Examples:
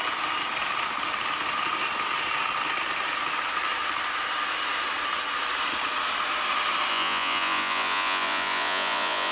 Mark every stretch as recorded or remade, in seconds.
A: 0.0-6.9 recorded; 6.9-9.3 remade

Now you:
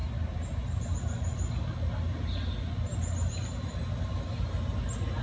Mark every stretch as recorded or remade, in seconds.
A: 0.0-5.2 recorded

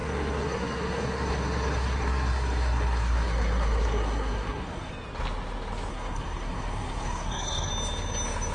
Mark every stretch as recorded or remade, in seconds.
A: 0.0-4.9 remade; 4.9-5.9 recorded; 5.9-7.7 remade; 7.7-8.5 recorded

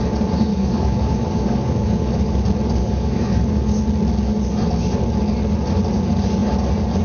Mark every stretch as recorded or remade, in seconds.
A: 0.0-0.5 recorded; 0.5-2.3 remade; 2.3-2.8 recorded; 2.8-3.8 remade; 3.8-7.0 recorded